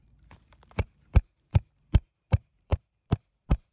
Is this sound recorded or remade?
remade